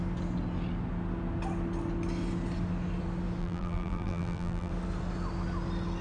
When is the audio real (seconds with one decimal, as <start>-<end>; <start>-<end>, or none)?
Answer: 0.0-3.4; 4.7-6.0